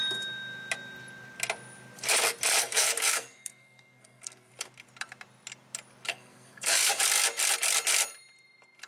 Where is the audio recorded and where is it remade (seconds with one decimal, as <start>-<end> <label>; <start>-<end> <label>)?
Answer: 0.0-2.6 recorded; 2.6-4.5 remade; 4.5-6.1 recorded; 6.1-7.0 remade; 7.0-8.9 recorded